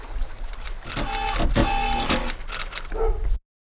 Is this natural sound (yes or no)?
yes